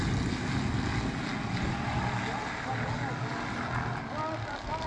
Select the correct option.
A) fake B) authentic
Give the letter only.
B